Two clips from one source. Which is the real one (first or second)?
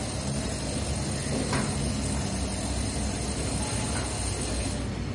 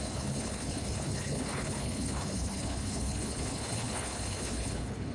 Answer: first